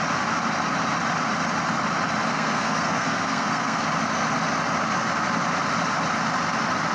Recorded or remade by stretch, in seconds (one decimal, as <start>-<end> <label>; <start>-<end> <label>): 0.0-2.3 recorded; 2.3-3.8 remade; 3.8-6.9 recorded